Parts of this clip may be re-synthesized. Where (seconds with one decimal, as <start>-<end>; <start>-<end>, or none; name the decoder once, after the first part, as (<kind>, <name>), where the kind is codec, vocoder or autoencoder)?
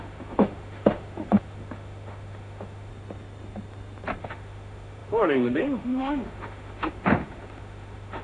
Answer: 0.0-2.9 (autoencoder, DAC-VAE); 4.2-8.2